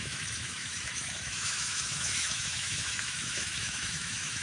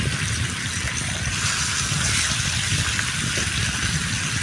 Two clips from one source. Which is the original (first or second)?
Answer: second